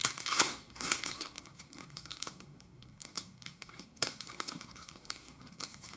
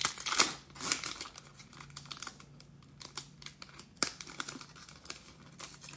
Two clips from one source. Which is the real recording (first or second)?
second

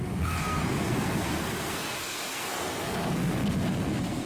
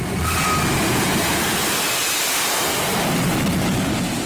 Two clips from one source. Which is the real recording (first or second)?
second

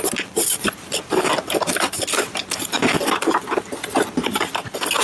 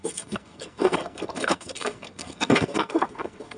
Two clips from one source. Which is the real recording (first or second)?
first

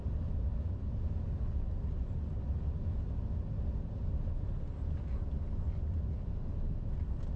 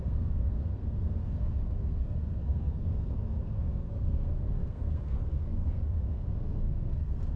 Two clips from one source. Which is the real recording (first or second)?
first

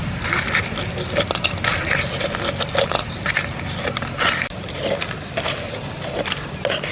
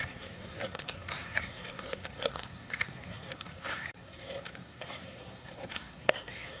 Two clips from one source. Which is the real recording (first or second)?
first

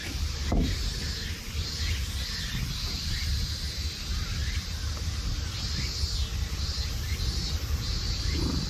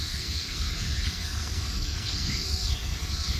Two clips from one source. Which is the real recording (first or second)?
first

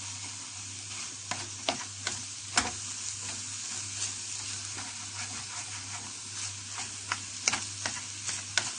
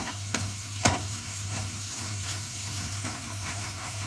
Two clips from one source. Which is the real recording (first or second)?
first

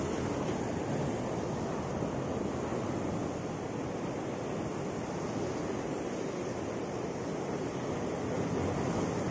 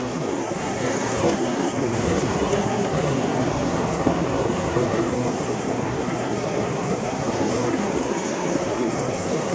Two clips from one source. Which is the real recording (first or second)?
first